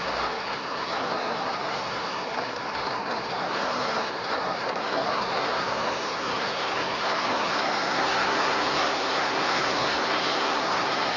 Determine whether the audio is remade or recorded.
remade